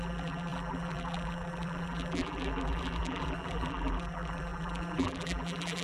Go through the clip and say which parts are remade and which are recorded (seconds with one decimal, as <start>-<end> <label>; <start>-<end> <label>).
0.0-5.8 remade